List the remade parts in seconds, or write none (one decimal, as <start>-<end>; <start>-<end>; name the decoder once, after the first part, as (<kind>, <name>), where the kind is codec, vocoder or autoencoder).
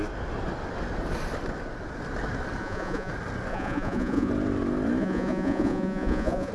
2.6-3.1 (vocoder, Vocos); 3.5-4.3; 5.0-6.5